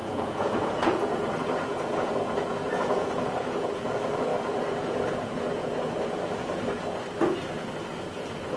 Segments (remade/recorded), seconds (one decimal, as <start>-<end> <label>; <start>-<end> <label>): 0.0-6.8 remade; 6.8-8.0 recorded; 8.0-8.6 remade